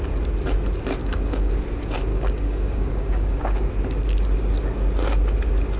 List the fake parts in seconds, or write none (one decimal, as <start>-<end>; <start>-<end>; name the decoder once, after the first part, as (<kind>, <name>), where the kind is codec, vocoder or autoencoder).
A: 1.0-1.5 (codec, DAC); 2.1-3.7